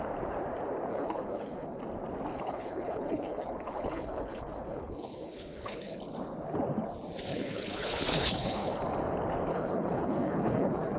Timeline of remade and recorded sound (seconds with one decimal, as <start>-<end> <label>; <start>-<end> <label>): 0.0-0.9 recorded; 0.9-1.8 remade; 1.8-2.3 recorded; 2.3-6.0 remade; 6.0-7.3 recorded; 7.3-8.8 remade; 8.8-9.5 recorded; 9.5-11.0 remade